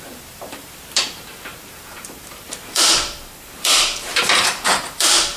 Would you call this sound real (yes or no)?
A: no